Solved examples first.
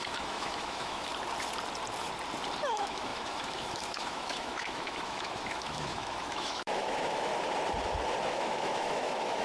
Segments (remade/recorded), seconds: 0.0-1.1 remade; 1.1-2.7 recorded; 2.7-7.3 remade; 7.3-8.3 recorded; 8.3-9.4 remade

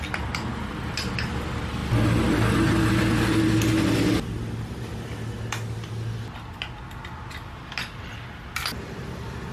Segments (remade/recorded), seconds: 0.0-9.5 recorded

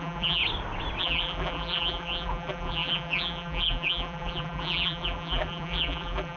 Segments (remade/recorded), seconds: 0.0-0.4 remade; 0.4-1.0 recorded; 1.0-6.4 remade

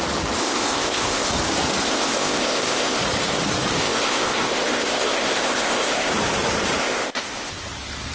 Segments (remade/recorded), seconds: 0.0-0.4 recorded; 0.4-1.3 remade; 1.3-1.8 recorded; 1.8-3.0 remade; 3.0-3.8 recorded; 3.8-6.1 remade; 6.1-6.8 recorded; 6.8-7.5 remade; 7.5-8.1 recorded

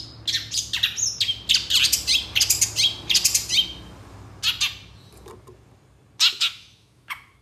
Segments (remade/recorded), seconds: 0.0-6.3 recorded; 6.3-7.4 remade

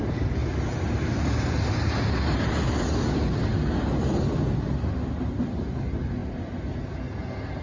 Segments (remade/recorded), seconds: 0.0-7.6 recorded

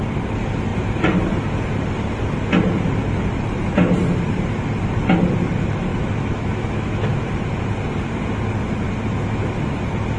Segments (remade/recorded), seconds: 0.0-5.9 recorded; 5.9-7.3 remade; 7.3-10.2 recorded